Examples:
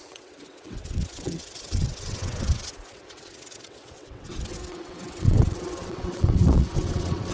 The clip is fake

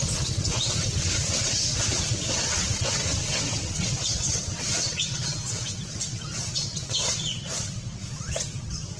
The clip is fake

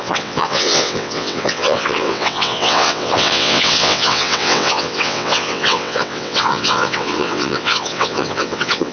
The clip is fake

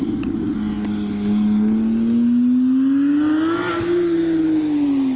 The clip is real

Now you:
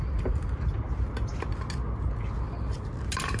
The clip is real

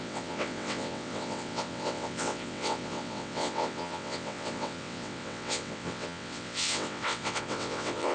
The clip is fake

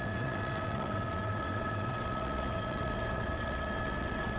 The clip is fake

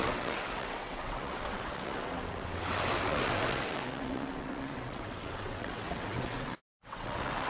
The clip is fake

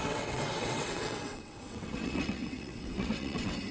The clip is fake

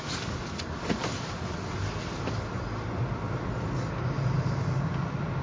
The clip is real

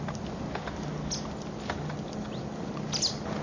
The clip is real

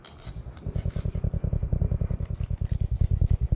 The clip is real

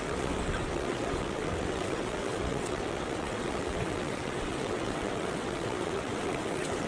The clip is fake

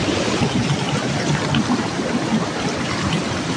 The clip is real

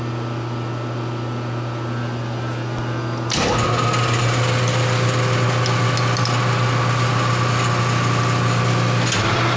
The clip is real